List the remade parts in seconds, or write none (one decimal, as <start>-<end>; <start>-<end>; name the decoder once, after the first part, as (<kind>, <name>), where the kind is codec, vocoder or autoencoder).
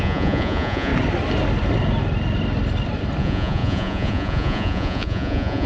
0.0-0.9 (vocoder, Vocos); 3.2-5.7